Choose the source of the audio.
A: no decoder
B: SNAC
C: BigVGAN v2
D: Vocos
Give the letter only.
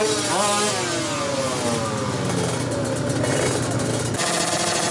A